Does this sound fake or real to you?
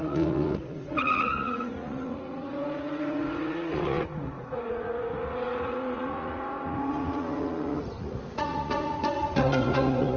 fake